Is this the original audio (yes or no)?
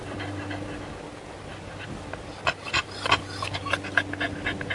yes